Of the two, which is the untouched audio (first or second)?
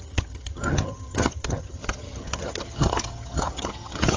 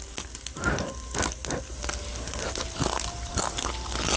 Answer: second